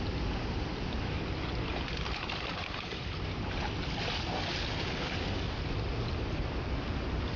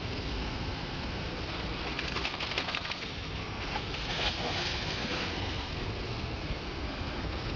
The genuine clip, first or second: first